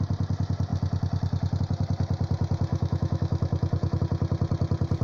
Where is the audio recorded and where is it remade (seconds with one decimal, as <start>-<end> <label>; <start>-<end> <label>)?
0.0-2.7 recorded; 2.7-4.0 remade; 4.0-5.0 recorded